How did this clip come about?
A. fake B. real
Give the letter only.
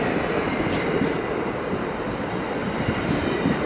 A